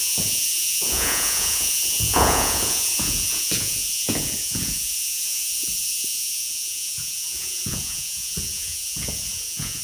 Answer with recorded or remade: remade